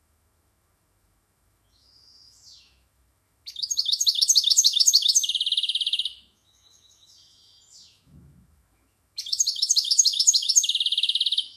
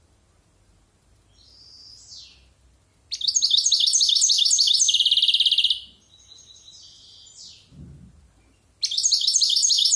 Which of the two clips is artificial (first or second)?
first